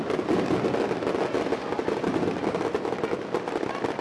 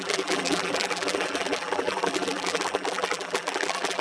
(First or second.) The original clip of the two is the first